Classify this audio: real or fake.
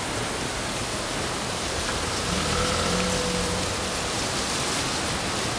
real